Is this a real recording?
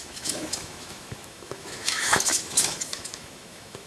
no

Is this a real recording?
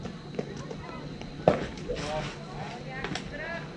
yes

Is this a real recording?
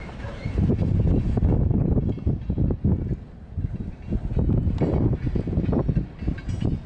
yes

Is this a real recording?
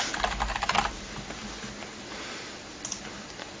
yes